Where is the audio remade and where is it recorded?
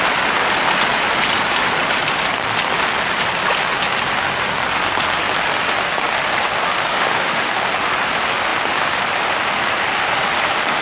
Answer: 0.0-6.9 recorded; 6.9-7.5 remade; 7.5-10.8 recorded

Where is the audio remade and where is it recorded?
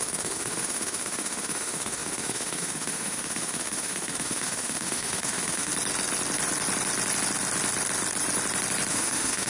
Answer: 0.0-5.7 remade; 5.7-8.9 recorded; 8.9-9.5 remade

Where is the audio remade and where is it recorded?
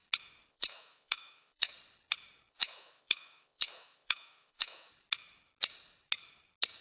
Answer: 0.0-0.5 recorded; 0.5-1.7 remade; 1.7-2.5 recorded; 2.5-4.9 remade; 4.9-6.8 recorded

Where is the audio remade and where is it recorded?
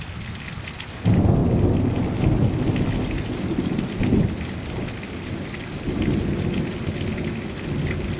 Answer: 0.0-8.2 recorded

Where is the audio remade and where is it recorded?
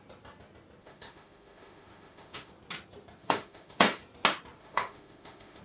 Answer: 0.0-0.8 recorded; 0.8-2.5 remade; 2.5-3.2 recorded; 3.2-4.0 remade; 4.0-4.6 recorded; 4.6-5.6 remade